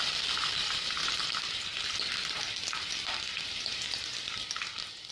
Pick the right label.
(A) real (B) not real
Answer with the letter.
A